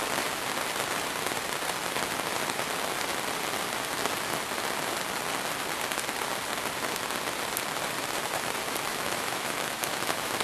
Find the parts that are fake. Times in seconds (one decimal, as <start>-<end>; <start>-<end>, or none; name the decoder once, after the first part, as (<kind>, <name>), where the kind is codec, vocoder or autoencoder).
8.9-10.4 (autoencoder, DAC-VAE)